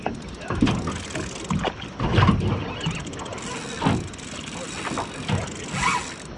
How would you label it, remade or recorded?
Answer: recorded